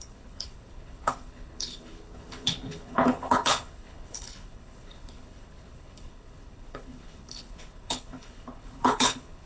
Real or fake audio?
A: fake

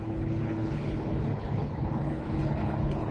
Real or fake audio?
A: fake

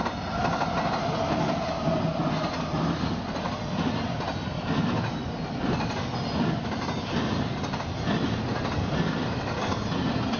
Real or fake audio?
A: real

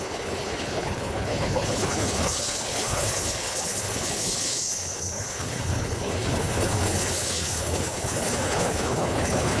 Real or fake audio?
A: fake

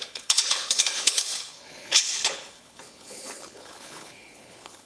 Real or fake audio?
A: fake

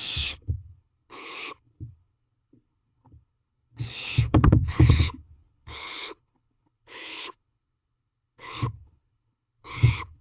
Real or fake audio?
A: fake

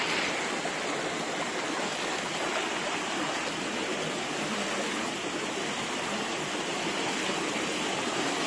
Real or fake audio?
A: real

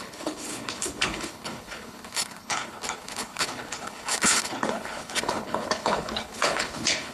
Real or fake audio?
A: fake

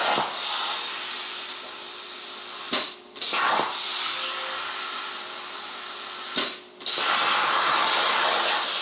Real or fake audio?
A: real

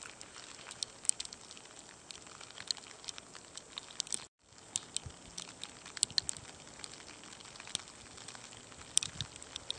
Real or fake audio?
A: real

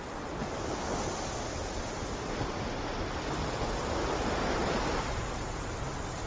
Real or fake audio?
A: real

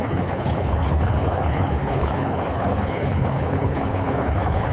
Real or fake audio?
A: fake